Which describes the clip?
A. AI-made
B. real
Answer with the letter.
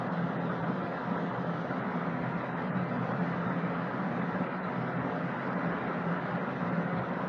A